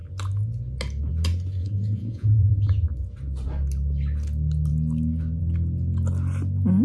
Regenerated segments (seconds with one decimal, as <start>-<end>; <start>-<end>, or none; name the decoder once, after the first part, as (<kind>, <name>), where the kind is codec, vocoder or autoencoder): 1.6-2.6 (vocoder, Vocos)